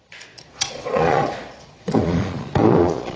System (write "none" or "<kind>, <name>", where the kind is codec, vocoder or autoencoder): vocoder, Vocos